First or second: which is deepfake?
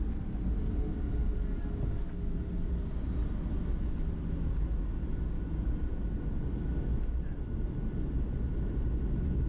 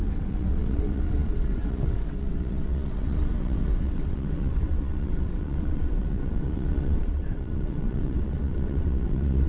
second